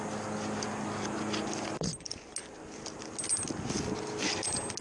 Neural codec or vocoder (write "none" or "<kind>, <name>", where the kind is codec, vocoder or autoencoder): none